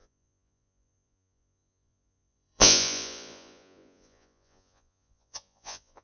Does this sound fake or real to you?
fake